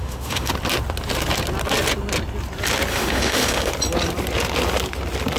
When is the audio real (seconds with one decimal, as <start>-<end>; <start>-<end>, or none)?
0.5-2.9; 3.7-5.4

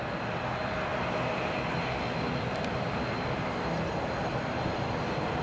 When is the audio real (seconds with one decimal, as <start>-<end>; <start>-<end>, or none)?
0.0-5.4

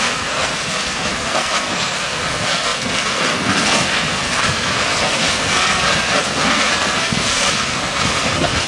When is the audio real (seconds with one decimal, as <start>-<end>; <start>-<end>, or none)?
none

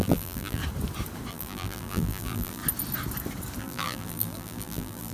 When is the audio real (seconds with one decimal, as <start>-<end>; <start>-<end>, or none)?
0.6-1.3; 2.6-3.6

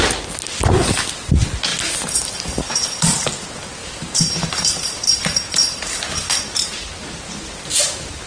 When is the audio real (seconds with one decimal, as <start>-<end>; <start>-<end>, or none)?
0.0-3.8; 6.0-8.3